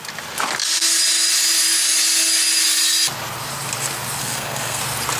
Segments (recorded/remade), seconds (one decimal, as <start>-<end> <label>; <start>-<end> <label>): 0.0-4.2 recorded; 4.2-4.8 remade; 4.8-5.2 recorded